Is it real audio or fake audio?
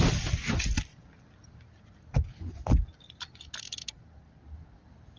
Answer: real